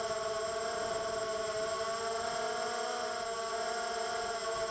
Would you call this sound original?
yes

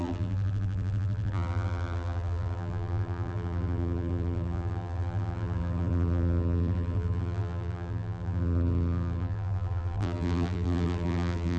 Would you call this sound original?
no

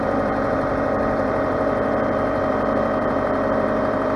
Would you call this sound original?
no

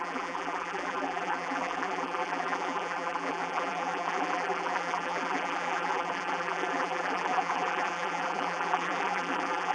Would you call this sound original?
no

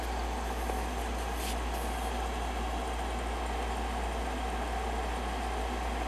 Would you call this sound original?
yes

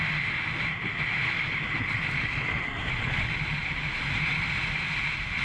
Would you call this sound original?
yes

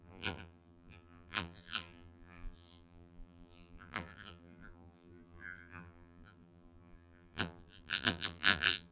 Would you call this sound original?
no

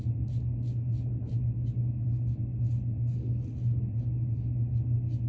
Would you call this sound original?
yes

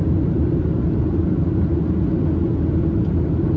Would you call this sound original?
yes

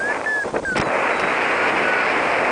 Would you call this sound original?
yes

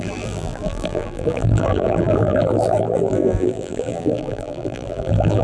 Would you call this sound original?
no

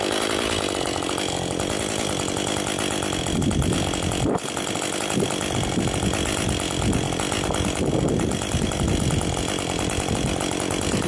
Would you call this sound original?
yes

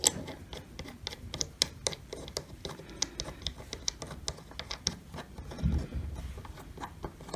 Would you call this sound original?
yes